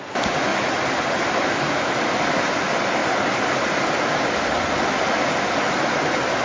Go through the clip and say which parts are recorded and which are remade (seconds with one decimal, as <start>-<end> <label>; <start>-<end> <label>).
0.0-0.5 recorded; 0.5-1.7 remade; 1.7-3.0 recorded; 3.0-3.8 remade; 3.8-6.4 recorded